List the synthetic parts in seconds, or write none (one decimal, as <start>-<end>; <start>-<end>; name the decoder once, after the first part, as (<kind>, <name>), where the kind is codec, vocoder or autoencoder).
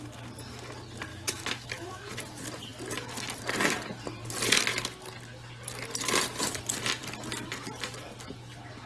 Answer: 1.1-2.1 (autoencoder, DAC-VAE)